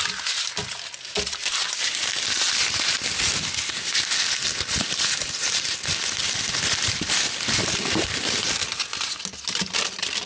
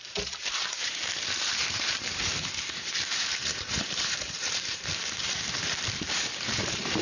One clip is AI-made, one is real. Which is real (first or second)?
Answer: first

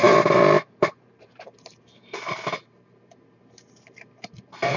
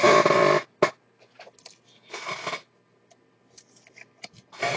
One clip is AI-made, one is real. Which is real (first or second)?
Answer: second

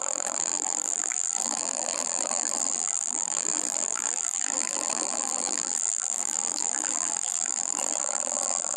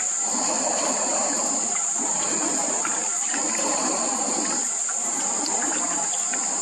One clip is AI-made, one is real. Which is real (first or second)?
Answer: second